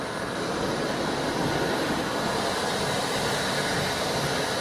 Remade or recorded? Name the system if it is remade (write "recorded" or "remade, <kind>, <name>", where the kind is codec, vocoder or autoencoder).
recorded